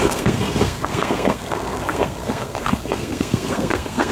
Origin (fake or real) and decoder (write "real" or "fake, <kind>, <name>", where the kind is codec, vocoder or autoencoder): fake, codec, SNAC